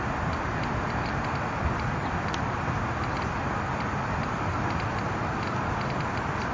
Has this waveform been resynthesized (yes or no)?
no